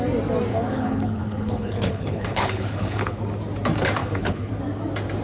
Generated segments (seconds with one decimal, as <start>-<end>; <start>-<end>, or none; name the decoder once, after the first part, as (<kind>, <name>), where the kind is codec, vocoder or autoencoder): 0.5-3.2 (codec, HILCodec); 4.0-4.5